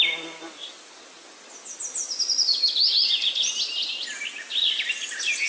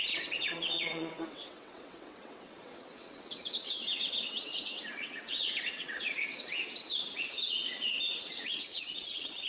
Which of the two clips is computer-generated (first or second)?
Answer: second